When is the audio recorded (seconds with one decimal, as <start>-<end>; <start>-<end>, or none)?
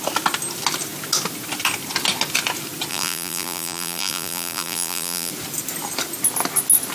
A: 0.0-2.9; 5.3-6.9